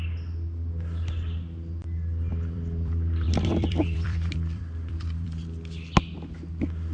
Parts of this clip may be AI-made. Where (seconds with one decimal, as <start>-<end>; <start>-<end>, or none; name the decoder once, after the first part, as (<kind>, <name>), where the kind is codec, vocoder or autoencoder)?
2.3-5.6 (vocoder, BigVGAN v2)